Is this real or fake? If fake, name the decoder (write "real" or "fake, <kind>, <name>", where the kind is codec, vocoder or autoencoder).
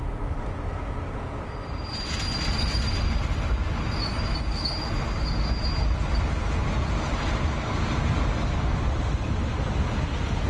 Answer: real